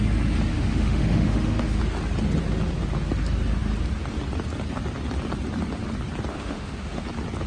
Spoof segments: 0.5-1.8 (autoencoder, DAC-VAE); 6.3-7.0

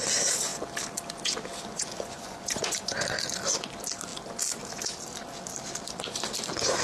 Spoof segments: 1.7-3.0 (vocoder, Vocos)